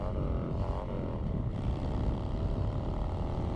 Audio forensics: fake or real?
real